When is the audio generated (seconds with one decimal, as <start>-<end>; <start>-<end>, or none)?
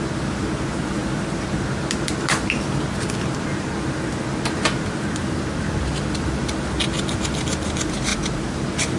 8.1-9.0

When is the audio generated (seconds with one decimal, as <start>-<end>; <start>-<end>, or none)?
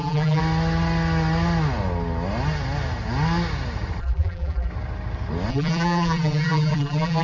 0.0-0.4; 4.0-4.7; 5.5-7.2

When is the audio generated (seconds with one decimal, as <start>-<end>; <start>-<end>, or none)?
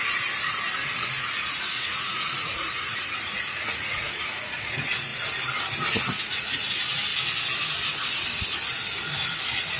1.0-5.1; 6.2-7.1; 9.4-9.8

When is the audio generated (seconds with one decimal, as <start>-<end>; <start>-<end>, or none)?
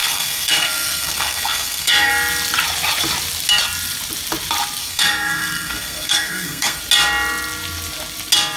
0.0-2.1; 4.8-6.8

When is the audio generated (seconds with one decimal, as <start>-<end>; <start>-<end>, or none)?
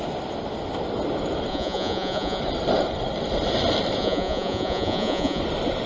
1.5-2.4; 4.0-5.4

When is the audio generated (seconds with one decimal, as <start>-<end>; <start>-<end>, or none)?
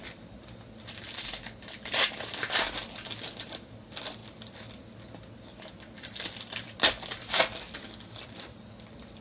none